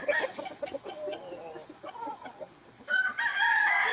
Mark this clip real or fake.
real